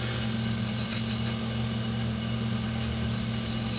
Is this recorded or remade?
recorded